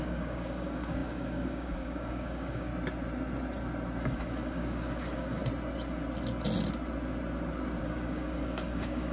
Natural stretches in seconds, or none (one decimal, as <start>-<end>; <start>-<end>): 2.7-4.0; 5.4-7.8